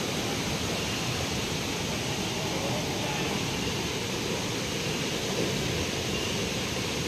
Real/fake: real